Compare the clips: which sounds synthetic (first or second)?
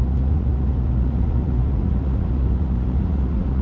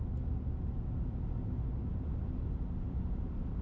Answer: first